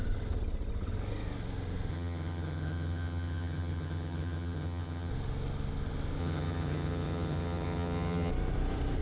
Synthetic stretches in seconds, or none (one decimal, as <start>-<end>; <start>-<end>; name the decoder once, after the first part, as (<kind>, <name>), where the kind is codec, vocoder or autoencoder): 1.9-5.1 (vocoder, HiFi-GAN); 6.2-8.3